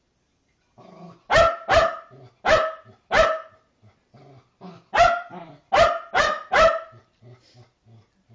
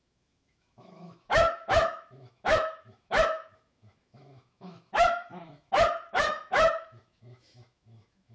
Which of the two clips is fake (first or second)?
second